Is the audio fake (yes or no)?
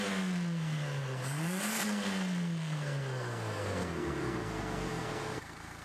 yes